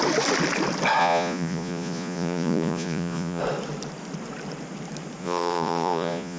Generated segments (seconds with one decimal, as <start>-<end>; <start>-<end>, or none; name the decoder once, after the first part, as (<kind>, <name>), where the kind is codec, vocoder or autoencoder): 1.0-3.4 (vocoder, Vocos); 5.2-6.4